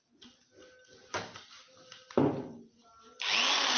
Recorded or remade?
recorded